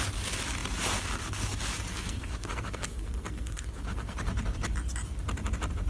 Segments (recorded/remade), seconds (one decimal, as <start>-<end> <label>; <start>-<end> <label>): 0.0-1.9 recorded; 1.9-4.3 remade; 4.3-5.9 recorded